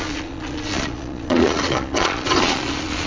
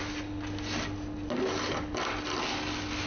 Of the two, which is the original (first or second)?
second